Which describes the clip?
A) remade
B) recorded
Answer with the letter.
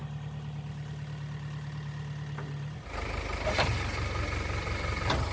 B